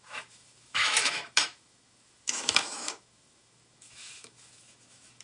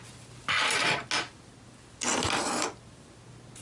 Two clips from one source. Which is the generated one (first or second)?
first